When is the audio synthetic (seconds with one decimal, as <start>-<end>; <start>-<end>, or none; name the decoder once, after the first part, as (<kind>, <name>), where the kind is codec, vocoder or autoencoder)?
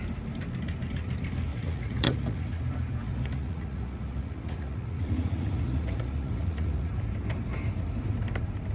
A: 1.5-2.6 (vocoder, Vocos); 3.0-6.9